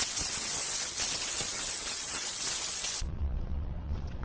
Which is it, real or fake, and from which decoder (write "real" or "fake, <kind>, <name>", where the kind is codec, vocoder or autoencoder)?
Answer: fake, vocoder, WaveNeXt